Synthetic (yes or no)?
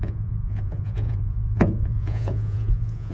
yes